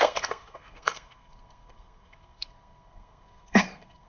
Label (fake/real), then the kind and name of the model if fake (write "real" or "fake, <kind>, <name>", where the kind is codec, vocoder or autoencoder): fake, codec, SNAC